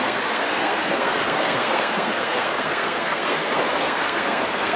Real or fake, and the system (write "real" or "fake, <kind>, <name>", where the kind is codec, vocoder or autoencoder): fake, codec, SNAC